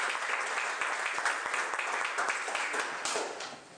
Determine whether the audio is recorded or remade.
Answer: recorded